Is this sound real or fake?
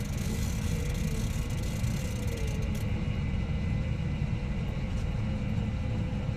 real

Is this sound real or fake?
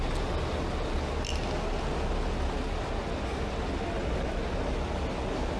real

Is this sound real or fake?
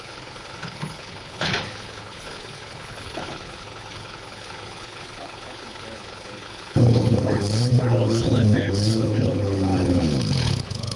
fake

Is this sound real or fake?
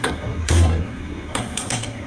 fake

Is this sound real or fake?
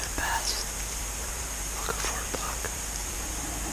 fake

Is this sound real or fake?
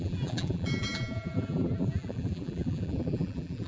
fake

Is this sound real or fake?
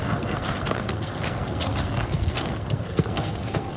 fake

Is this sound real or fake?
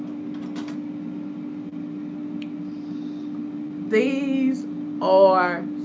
real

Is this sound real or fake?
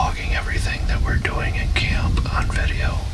real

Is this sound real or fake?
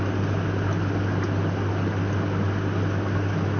real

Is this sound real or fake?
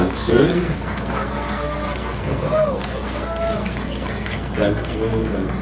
fake